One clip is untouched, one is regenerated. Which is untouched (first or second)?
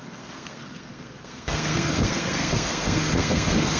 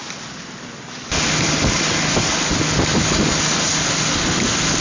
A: second